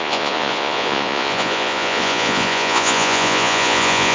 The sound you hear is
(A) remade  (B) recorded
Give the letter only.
A